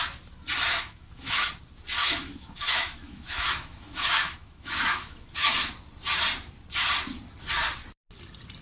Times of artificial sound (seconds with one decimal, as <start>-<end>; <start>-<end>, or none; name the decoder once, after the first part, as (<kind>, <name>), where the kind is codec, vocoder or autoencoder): 0.7-1.5 (autoencoder, DAC-VAE); 2.0-5.7